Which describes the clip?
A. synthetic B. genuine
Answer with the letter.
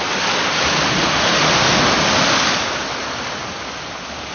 B